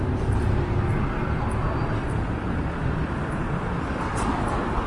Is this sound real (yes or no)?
yes